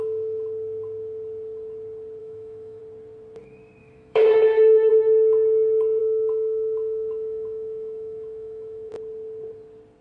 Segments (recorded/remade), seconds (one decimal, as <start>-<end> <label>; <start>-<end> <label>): 0.0-2.2 recorded; 2.2-2.8 remade; 2.8-3.8 recorded; 3.8-4.9 remade; 4.9-6.0 recorded; 6.0-8.9 remade; 8.9-10.0 recorded